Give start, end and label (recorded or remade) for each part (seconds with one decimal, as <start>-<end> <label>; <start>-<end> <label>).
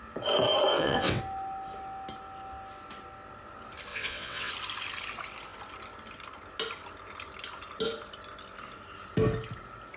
0.0-0.7 recorded; 0.7-1.2 remade; 1.2-3.9 recorded; 3.9-4.5 remade; 4.5-10.0 recorded